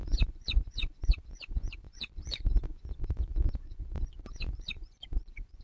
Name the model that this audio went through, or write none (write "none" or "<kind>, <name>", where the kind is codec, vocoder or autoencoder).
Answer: vocoder, Vocos